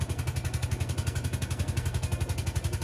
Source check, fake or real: fake